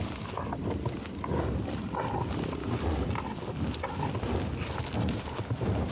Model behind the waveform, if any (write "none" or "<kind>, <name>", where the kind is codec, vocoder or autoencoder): none